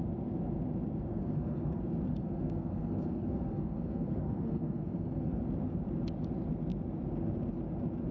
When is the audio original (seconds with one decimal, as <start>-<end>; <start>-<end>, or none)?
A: 0.0-1.1; 1.8-2.2; 5.4-8.1